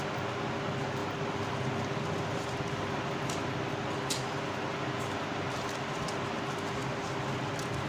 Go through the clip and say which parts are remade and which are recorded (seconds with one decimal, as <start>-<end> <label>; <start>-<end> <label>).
0.0-7.9 recorded